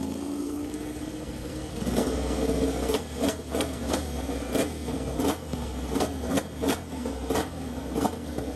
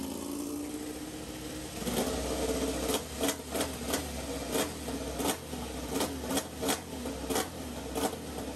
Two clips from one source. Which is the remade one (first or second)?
first